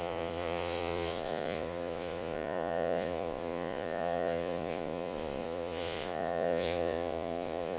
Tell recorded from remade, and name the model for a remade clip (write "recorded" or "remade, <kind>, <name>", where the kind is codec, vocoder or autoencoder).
remade, vocoder, Vocos